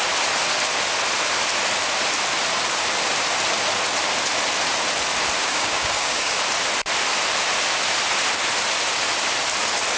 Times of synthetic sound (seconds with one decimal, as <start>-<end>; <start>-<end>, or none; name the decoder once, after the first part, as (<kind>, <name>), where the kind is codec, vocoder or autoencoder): 5.4-6.4 (codec, DAC)